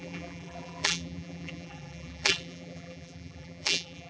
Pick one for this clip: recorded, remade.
remade